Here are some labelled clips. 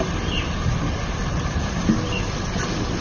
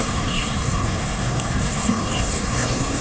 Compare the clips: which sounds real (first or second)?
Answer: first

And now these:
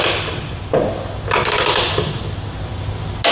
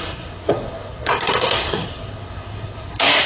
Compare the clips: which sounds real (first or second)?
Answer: first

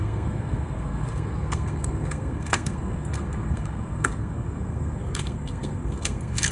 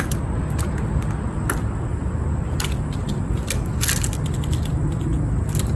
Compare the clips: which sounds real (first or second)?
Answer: second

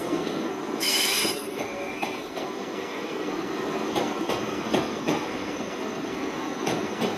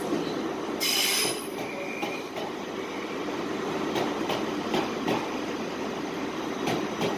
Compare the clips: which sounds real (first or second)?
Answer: second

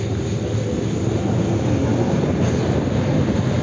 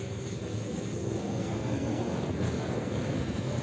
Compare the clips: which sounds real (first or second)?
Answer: first